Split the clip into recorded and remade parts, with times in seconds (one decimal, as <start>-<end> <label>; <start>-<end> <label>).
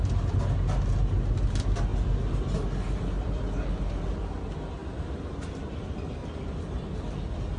0.0-4.8 recorded; 4.8-5.7 remade; 5.7-6.2 recorded; 6.2-7.1 remade; 7.1-7.6 recorded